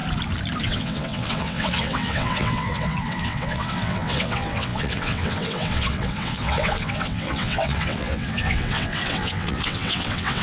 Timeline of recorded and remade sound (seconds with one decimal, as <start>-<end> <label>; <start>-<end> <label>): 0.0-0.6 recorded; 0.6-10.4 remade